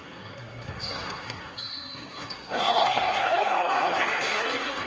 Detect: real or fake fake